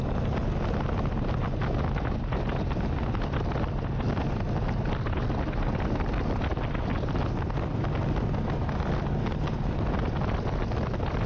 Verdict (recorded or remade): recorded